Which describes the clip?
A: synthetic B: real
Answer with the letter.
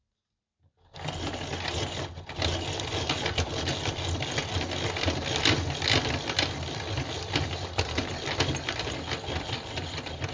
B